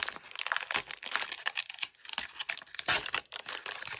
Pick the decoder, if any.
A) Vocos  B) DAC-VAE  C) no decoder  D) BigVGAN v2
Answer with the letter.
C